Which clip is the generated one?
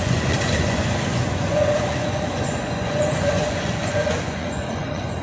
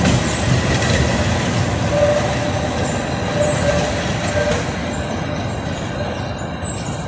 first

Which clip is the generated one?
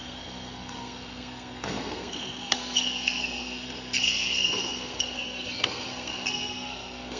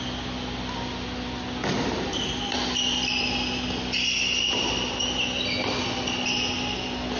first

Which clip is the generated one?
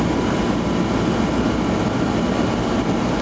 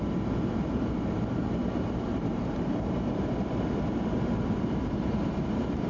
second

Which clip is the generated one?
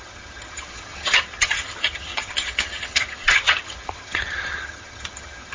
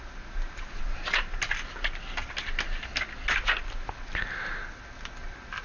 first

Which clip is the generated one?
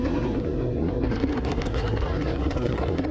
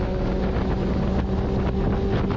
first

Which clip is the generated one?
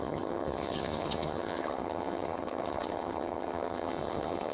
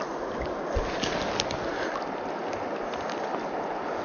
first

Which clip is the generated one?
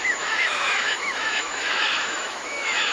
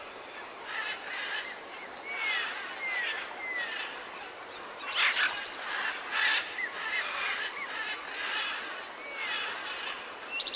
first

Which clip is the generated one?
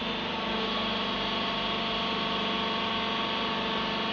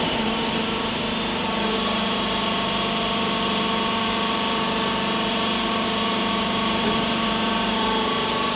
second